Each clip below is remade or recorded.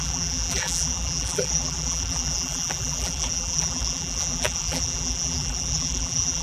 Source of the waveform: remade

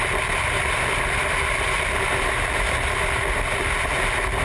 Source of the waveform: recorded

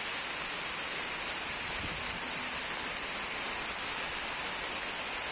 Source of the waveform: recorded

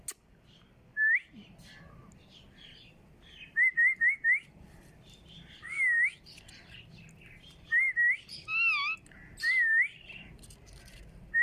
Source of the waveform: recorded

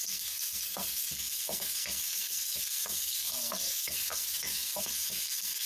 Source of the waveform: remade